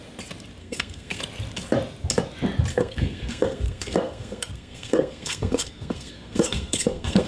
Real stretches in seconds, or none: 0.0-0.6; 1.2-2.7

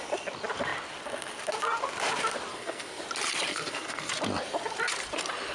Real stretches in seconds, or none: 0.0-2.5; 3.0-3.5; 4.1-5.5

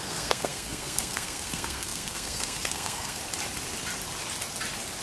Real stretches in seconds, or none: 3.2-5.0

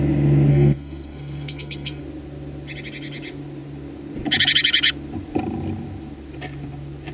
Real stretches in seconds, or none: 0.0-0.5; 2.0-7.1

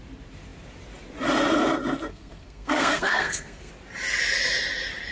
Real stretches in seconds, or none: 0.0-2.1; 3.7-5.1

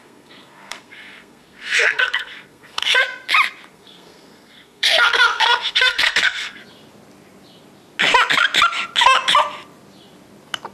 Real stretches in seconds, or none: 3.0-3.7; 6.6-10.7

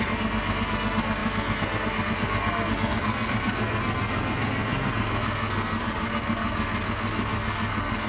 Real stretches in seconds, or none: none